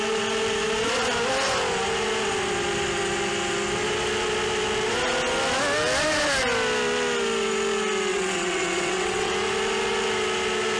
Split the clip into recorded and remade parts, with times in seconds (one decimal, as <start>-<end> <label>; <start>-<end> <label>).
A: 0.0-8.1 recorded; 8.1-9.3 remade; 9.3-10.8 recorded

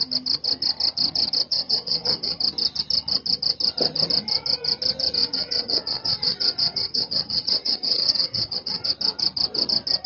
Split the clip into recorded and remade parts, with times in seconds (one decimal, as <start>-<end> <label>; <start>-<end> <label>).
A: 0.0-1.5 recorded; 1.5-2.4 remade; 2.4-5.2 recorded; 5.2-8.9 remade; 8.9-10.1 recorded